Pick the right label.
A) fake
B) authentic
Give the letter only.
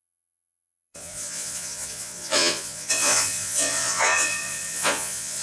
A